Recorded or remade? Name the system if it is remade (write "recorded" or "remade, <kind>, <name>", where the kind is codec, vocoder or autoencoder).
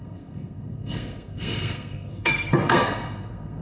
remade, codec, SNAC